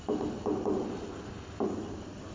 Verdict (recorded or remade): recorded